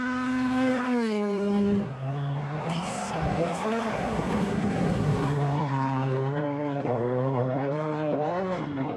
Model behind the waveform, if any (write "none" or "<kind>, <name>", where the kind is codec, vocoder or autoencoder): codec, SNAC